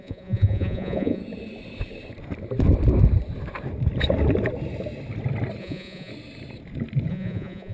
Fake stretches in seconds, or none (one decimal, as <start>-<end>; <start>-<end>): 0.0-1.2; 5.6-6.1; 7.1-7.7